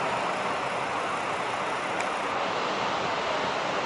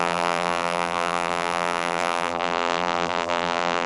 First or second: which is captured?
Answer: first